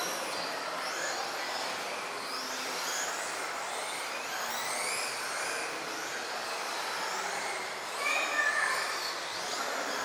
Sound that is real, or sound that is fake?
real